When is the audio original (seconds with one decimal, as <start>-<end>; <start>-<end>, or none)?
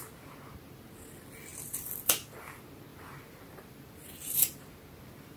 0.0-1.5; 2.4-2.9; 4.6-5.4